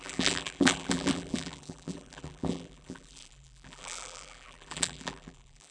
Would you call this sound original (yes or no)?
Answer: no